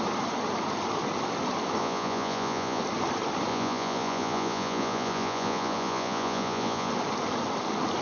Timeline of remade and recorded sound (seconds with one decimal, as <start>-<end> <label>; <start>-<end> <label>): 0.0-1.8 recorded; 1.8-2.8 remade; 2.8-3.5 recorded; 3.5-6.9 remade; 6.9-8.0 recorded